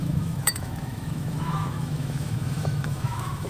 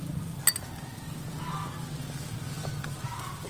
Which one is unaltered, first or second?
second